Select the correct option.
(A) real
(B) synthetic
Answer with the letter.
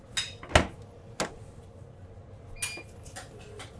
A